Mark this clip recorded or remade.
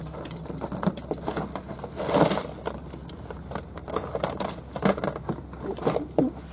recorded